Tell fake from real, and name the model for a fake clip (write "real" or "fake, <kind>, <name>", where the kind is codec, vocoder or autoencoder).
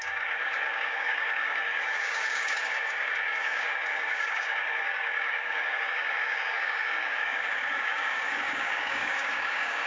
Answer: fake, codec, DAC